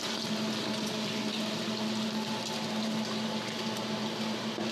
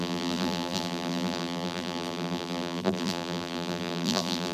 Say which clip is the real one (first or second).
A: first